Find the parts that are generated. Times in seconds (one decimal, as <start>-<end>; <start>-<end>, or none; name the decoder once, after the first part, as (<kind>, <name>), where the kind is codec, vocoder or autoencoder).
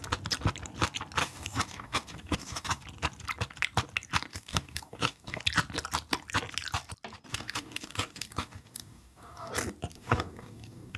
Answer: 1.2-2.8 (codec, DAC); 4.3-5.4; 7.3-9.5; 9.9-11.0